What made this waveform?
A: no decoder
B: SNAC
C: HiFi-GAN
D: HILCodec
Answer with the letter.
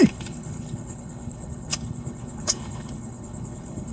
D